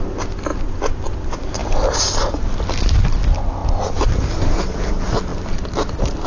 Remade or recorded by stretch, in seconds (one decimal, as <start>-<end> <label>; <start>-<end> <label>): 0.0-6.3 recorded